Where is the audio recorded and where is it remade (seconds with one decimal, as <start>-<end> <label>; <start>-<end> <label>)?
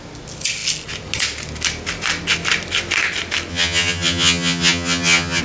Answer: 0.0-3.5 recorded; 3.5-5.4 remade